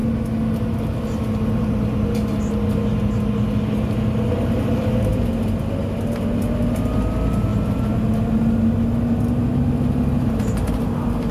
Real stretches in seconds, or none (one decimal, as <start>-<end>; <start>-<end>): 0.0-11.3